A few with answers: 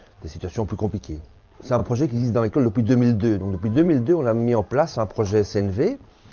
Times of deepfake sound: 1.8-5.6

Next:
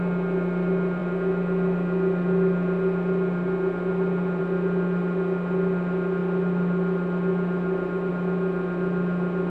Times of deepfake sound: none

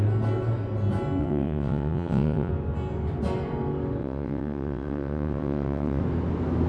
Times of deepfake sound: 1.2-2.5; 4.0-6.0

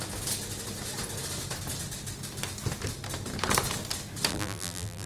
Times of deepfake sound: 4.3-5.1

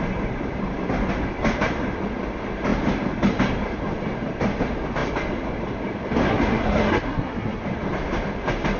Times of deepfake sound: 6.3-7.6

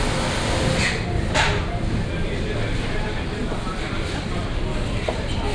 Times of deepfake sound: 3.4-4.4

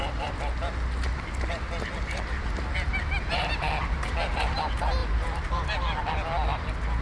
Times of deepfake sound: none